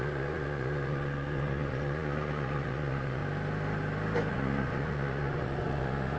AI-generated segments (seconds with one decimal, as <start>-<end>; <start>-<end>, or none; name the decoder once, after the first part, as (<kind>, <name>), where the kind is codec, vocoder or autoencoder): 0.0-3.2 (vocoder, Vocos); 4.3-6.2